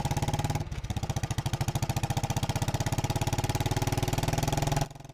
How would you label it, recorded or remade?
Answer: recorded